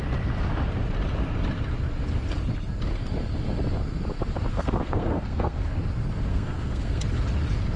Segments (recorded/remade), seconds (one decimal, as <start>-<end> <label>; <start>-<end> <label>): 0.0-4.5 recorded; 4.5-5.7 remade; 5.7-6.3 recorded; 6.3-7.0 remade; 7.0-7.8 recorded